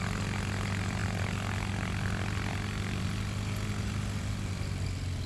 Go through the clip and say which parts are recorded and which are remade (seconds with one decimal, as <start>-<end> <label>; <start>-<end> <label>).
0.0-5.3 recorded